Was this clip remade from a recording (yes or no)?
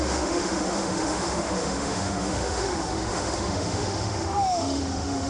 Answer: yes